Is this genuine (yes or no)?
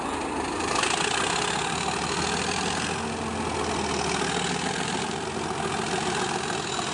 yes